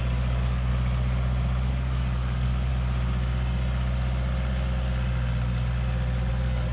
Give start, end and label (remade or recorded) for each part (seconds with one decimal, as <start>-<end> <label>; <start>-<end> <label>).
0.0-0.7 remade; 0.7-1.7 recorded; 1.7-2.7 remade; 2.7-6.3 recorded; 6.3-6.7 remade